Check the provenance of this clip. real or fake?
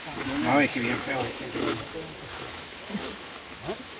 fake